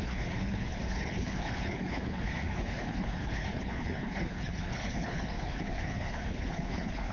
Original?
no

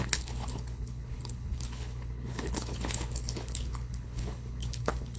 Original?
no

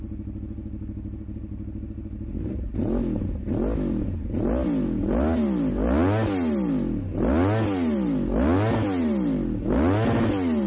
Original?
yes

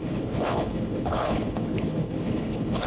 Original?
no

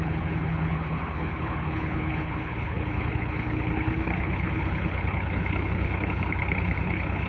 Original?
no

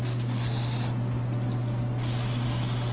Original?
yes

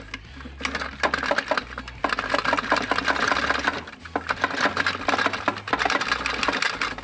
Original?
yes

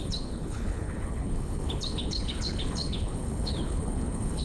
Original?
no